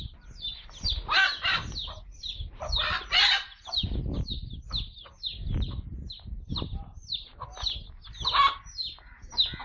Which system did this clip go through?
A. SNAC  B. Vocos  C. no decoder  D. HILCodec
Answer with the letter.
C